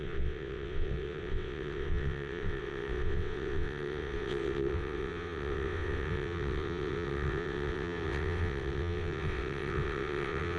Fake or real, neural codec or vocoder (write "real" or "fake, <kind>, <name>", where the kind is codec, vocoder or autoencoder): fake, vocoder, WaveNeXt